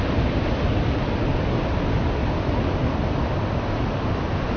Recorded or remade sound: recorded